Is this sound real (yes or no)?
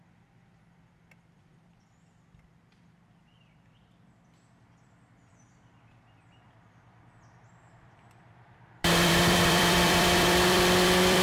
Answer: no